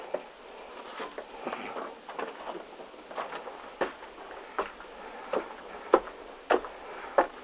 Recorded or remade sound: recorded